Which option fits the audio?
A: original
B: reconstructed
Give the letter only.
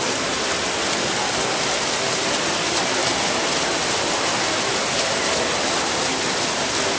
A